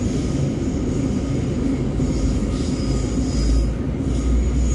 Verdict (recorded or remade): recorded